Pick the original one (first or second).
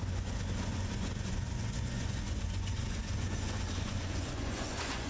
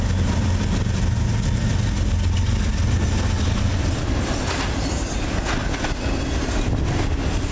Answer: second